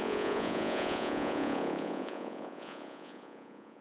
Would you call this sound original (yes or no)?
no